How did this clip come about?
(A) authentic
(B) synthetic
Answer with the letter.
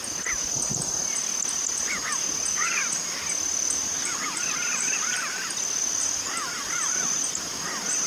A